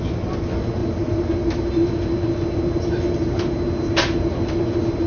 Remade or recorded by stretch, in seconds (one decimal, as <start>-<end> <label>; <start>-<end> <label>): 0.0-5.1 recorded